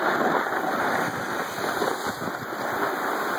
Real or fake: real